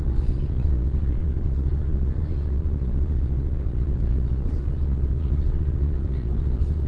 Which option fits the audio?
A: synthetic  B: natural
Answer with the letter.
A